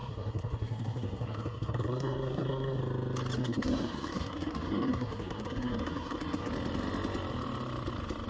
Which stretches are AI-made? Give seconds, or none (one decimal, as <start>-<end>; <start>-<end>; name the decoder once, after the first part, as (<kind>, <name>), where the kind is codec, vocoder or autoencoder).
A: 0.0-2.8 (codec, SNAC); 3.4-6.5